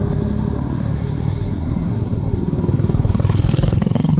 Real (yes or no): no